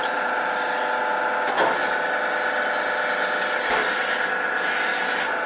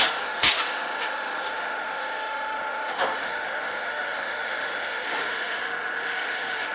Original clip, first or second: first